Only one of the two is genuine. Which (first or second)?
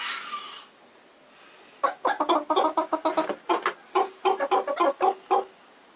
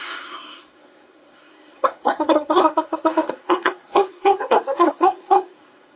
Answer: first